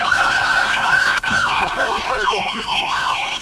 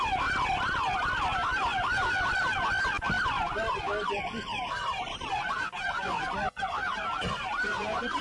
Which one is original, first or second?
second